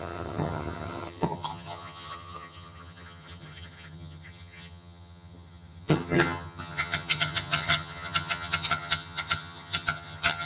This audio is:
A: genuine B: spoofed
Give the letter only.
B